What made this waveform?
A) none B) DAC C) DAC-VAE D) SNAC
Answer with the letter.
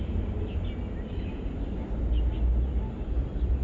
A